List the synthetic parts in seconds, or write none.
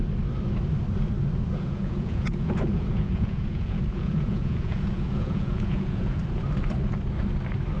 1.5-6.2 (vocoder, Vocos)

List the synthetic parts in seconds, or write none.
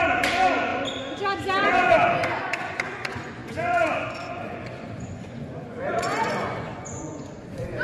0.0-0.7 (vocoder, Vocos); 1.6-7.8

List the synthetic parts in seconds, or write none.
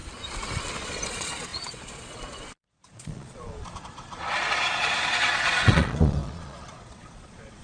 0.7-7.6 (vocoder, Vocos)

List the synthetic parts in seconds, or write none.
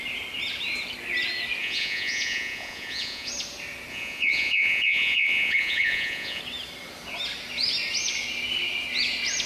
1.6-3.3 (vocoder, Vocos); 3.9-6.4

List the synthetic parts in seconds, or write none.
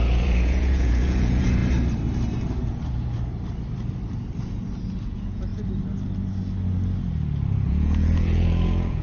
0.0-1.6 (vocoder, Vocos); 5.0-5.5; 7.7-9.0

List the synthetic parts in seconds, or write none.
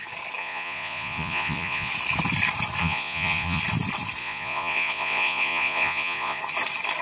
0.4-1.9 (vocoder, Vocos); 2.8-3.6; 4.2-6.4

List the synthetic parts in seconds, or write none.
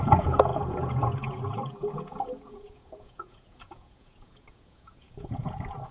0.0-5.9 (vocoder, Vocos)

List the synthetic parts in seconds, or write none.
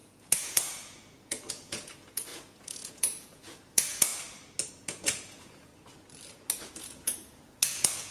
0.0-4.1 (vocoder, Vocos); 4.7-5.7; 6.8-8.1